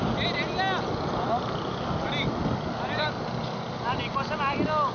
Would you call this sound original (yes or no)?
yes